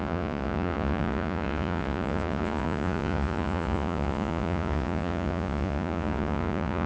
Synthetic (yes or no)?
yes